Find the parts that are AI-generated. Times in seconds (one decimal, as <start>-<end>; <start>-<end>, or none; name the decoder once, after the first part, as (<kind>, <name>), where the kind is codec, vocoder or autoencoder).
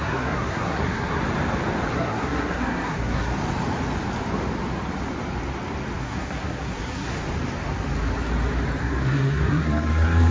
0.0-1.2 (codec, SNAC); 1.9-3.3; 6.0-7.1; 8.8-10.3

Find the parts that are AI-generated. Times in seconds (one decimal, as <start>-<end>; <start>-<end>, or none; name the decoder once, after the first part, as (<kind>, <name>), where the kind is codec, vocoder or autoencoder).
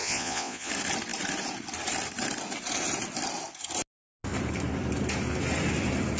0.0-0.7 (vocoder, Vocos)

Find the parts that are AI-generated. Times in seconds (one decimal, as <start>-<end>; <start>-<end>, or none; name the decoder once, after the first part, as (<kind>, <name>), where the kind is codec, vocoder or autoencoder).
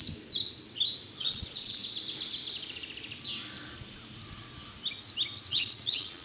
1.2-1.8 (vocoder, Vocos); 5.5-6.2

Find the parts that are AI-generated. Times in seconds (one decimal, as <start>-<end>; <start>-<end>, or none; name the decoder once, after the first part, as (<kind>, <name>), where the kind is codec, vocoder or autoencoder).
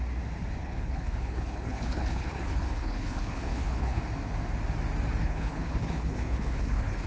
0.6-4.0 (codec, HILCodec); 5.2-7.1